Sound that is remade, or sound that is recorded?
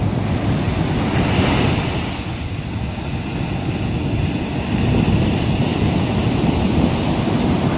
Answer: recorded